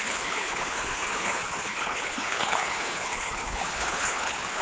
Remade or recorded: remade